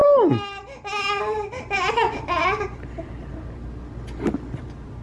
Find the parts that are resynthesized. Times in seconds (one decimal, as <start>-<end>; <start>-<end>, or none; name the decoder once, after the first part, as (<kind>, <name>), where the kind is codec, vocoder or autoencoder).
none